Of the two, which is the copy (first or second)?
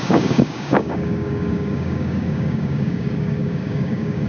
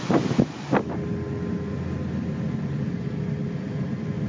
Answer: first